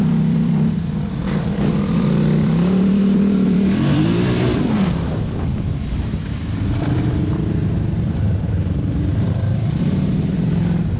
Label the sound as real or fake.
fake